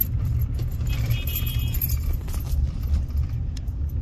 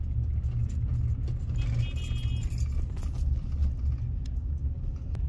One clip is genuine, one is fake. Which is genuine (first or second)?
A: second